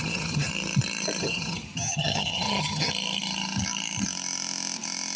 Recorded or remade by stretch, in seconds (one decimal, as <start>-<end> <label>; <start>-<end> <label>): 0.0-0.5 remade; 0.5-1.2 recorded; 1.2-2.9 remade; 2.9-5.2 recorded